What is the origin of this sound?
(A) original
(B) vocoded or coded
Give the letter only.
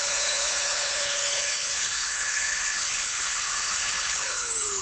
B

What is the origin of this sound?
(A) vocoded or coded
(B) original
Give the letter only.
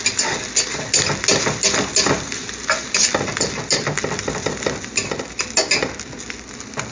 B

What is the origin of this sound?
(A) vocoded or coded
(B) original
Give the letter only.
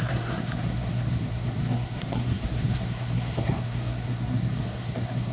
A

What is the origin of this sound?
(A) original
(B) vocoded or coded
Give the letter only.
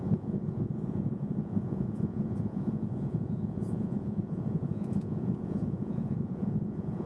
B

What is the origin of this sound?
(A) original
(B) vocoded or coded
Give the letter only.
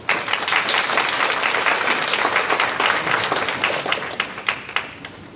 A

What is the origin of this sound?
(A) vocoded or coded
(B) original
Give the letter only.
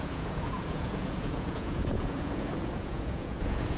A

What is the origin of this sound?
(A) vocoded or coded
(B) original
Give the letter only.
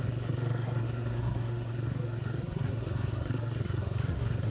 A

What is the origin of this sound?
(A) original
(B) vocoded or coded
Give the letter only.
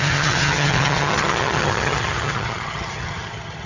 B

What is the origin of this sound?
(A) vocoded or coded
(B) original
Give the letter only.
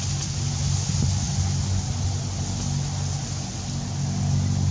B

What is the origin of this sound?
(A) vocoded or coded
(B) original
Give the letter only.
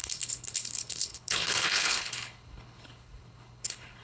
A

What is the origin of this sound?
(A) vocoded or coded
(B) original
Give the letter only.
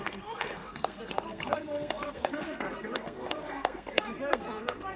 A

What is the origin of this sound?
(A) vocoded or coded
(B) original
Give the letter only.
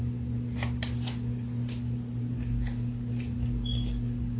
B